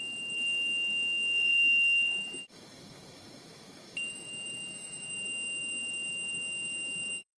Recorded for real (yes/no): no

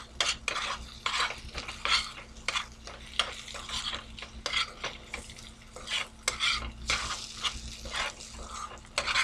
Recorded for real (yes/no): yes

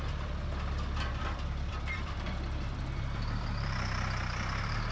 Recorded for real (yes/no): no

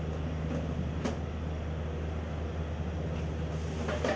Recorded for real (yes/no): yes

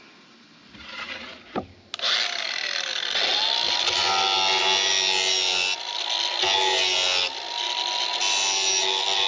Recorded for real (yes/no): yes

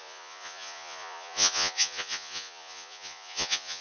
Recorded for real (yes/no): no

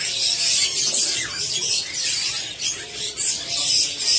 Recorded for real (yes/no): yes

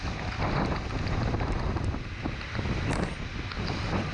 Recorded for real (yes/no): yes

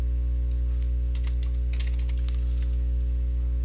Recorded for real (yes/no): yes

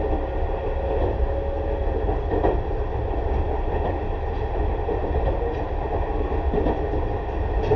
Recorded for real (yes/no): yes